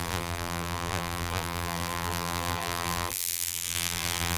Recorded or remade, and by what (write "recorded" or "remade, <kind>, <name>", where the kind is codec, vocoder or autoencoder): remade, vocoder, BigVGAN v2